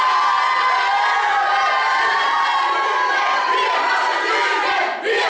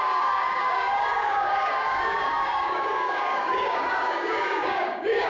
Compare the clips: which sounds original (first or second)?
first